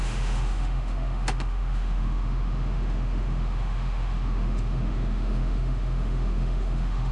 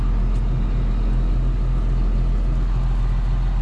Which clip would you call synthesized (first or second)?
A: first